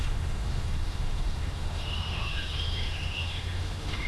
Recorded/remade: remade